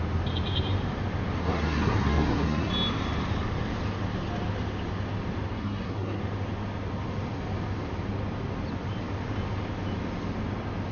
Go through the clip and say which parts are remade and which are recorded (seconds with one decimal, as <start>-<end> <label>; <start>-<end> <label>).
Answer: 0.0-1.4 recorded; 1.4-2.7 remade; 2.7-5.5 recorded; 5.5-6.2 remade; 6.2-10.9 recorded